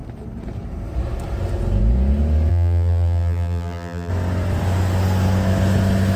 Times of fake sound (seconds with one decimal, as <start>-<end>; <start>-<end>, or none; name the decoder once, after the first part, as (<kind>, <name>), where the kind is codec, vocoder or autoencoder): 2.5-4.1 (vocoder, BigVGAN v2)